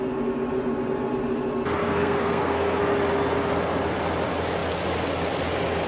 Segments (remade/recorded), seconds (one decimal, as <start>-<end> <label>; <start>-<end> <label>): 0.0-1.8 recorded; 1.8-2.8 remade; 2.8-5.9 recorded